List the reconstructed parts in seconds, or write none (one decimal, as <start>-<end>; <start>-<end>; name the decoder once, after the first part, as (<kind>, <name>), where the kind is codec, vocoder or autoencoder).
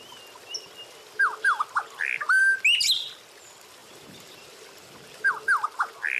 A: 3.8-5.3 (vocoder, BigVGAN v2)